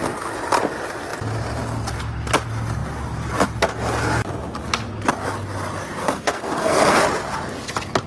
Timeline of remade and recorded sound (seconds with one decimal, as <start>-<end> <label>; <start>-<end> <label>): 0.0-6.0 recorded; 6.0-7.0 remade; 7.0-8.1 recorded